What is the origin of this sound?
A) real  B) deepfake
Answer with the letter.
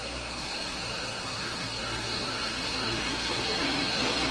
B